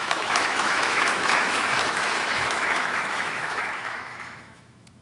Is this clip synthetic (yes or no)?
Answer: yes